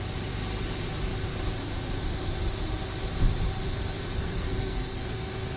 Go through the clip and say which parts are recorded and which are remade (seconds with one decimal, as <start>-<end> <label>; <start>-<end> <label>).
0.0-4.2 recorded; 4.2-5.0 remade; 5.0-5.6 recorded